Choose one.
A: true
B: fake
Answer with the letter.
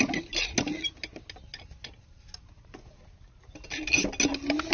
A